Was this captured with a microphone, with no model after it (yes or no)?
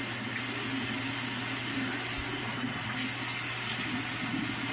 yes